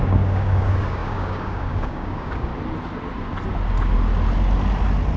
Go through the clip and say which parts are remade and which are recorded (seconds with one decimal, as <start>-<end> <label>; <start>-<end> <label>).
0.0-2.5 remade; 2.5-5.2 recorded